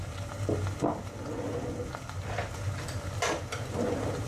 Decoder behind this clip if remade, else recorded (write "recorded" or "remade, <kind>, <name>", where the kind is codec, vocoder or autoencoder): recorded